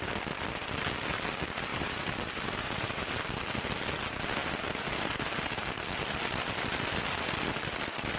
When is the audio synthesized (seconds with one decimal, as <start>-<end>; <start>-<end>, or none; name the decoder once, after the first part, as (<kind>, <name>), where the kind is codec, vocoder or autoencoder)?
1.7-3.1 (vocoder, BigVGAN v2)